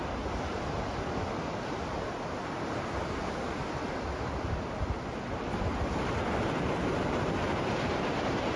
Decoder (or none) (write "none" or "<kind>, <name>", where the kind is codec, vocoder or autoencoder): none